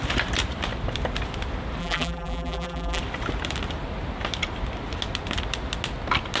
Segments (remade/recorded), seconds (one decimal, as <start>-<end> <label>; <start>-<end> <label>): 0.0-1.8 recorded; 1.8-3.0 remade; 3.0-6.4 recorded